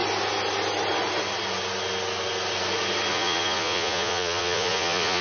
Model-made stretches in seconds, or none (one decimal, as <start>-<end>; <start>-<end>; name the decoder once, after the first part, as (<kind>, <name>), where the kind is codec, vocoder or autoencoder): 3.1-5.2 (vocoder, Vocos)